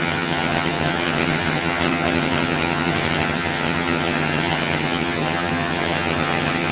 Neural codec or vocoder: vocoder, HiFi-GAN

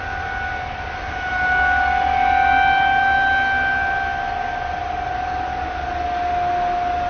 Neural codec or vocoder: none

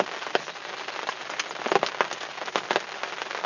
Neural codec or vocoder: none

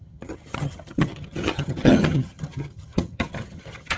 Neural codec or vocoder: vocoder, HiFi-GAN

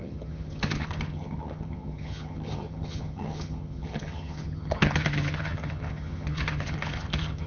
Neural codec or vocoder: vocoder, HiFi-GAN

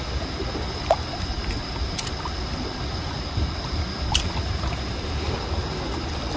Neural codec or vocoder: none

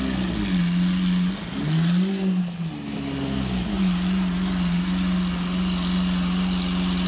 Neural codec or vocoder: none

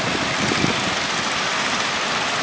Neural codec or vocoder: none